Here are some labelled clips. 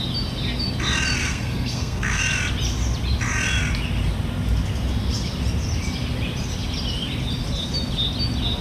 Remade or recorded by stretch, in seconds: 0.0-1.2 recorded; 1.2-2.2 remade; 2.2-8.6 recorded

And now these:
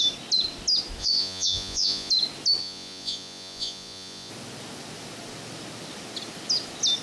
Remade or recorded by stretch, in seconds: 0.0-1.0 recorded; 1.0-2.1 remade; 2.1-2.6 recorded; 2.6-4.3 remade; 4.3-7.0 recorded

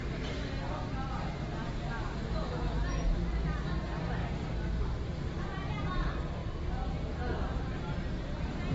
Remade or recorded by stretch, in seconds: 0.0-8.7 recorded

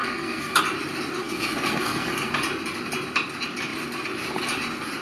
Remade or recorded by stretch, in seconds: 0.0-0.6 remade; 0.6-1.2 recorded; 1.2-2.3 remade; 2.3-5.0 recorded

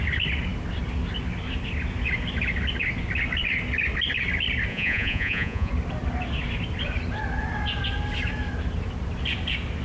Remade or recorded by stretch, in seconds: 0.0-4.7 recorded; 4.7-5.7 remade; 5.7-9.8 recorded

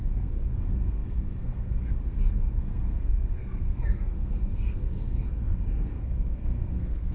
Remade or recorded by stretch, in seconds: 0.0-7.1 remade

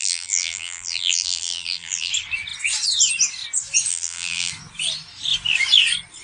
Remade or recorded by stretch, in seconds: 0.0-2.1 remade; 2.1-3.9 recorded; 3.9-4.5 remade; 4.5-6.2 recorded

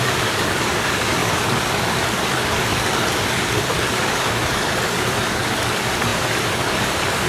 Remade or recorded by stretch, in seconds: 0.0-7.3 remade